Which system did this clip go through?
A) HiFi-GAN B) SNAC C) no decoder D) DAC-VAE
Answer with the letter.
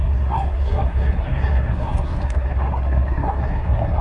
B